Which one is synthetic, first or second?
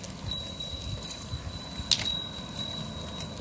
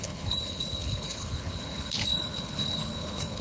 second